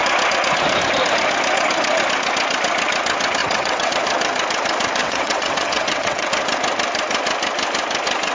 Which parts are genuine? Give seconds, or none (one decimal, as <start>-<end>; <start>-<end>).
0.0-3.4; 3.9-5.0; 6.3-8.3